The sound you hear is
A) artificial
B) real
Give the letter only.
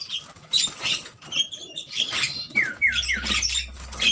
A